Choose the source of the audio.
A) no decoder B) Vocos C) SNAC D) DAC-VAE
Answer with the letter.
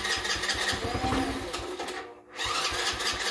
A